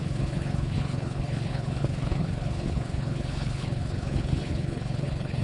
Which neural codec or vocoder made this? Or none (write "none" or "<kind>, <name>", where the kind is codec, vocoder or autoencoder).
codec, HILCodec